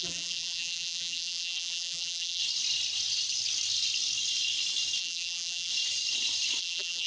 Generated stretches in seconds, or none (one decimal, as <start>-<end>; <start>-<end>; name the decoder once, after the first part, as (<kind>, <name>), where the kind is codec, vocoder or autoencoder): 0.0-2.4 (vocoder, BigVGAN v2); 5.0-5.7; 6.6-7.1